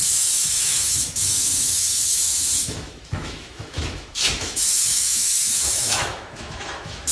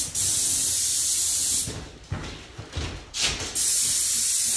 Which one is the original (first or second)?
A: second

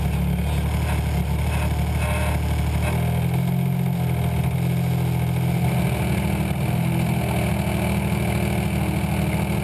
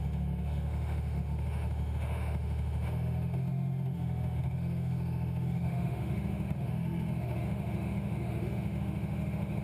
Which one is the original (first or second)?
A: first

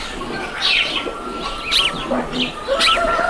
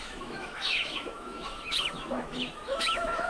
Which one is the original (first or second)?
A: first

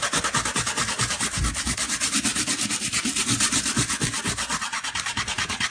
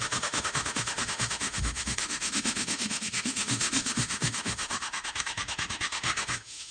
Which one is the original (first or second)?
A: first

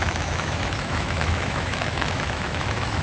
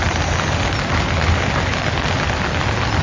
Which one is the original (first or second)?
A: second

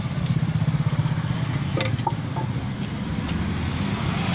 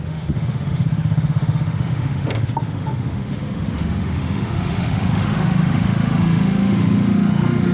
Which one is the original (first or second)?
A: first